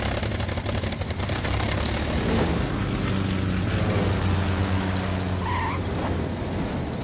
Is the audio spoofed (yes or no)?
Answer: no